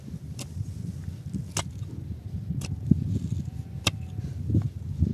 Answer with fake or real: real